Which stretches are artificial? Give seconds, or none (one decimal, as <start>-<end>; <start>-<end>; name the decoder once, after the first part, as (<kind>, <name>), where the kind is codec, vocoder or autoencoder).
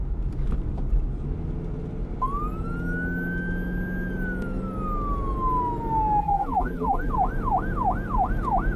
6.2-7.1 (vocoder, BigVGAN v2)